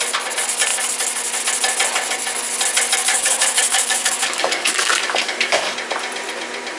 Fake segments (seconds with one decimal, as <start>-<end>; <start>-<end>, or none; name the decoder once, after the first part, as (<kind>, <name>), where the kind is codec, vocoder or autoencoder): 3.1-5.7 (codec, DAC)